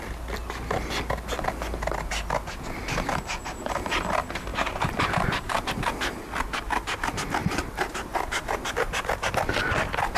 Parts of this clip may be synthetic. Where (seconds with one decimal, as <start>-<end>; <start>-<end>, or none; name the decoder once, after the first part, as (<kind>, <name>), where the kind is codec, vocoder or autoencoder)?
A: 4.5-5.7 (vocoder, BigVGAN v2); 7.4-8.7